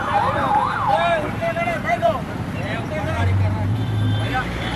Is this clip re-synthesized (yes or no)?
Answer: yes